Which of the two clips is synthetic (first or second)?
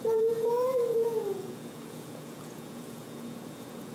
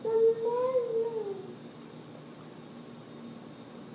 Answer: first